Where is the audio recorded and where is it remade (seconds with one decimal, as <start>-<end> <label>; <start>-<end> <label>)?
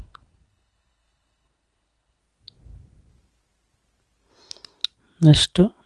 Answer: 0.0-2.2 remade; 2.2-5.9 recorded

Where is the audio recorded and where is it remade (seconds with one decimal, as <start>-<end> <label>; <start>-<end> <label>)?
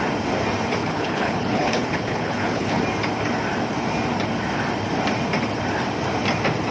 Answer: 0.0-0.8 recorded; 0.8-2.8 remade; 2.8-6.7 recorded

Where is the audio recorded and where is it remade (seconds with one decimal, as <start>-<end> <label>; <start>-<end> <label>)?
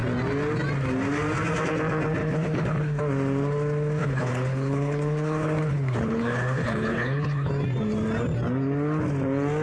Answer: 0.0-2.2 recorded; 2.2-3.0 remade; 3.0-4.0 recorded; 4.0-7.5 remade; 7.5-9.6 recorded